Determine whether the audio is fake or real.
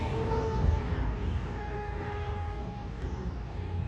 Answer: fake